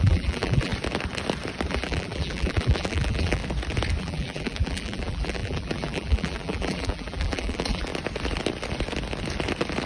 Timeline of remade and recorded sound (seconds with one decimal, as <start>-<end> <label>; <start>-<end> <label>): 0.0-0.7 remade; 0.7-1.7 recorded; 1.7-3.4 remade; 3.4-4.0 recorded; 4.0-7.9 remade; 7.9-9.9 recorded